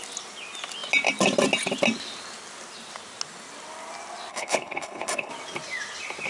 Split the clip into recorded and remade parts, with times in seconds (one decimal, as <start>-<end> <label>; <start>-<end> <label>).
0.0-4.3 recorded; 4.3-5.3 remade; 5.3-6.3 recorded